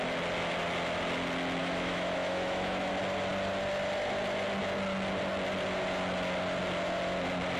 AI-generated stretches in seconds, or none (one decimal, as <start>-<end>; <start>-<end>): 1.6-2.9